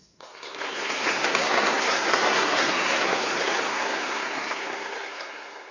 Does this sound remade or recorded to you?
remade